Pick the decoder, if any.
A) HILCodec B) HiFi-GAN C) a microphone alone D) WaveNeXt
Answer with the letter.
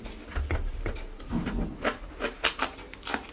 C